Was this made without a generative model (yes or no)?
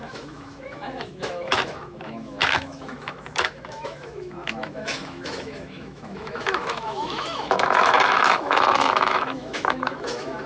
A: no